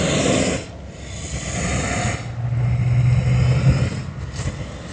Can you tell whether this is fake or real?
real